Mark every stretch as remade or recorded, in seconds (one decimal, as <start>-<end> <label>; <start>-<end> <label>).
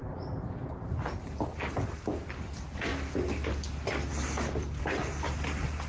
0.0-5.9 recorded